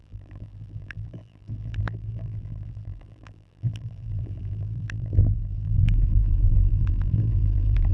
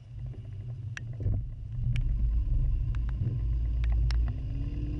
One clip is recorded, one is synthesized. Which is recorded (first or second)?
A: second